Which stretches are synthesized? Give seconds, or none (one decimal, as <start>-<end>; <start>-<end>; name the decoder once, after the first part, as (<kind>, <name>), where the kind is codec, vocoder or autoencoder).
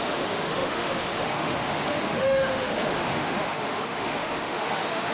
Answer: 0.0-5.1 (autoencoder, DAC-VAE)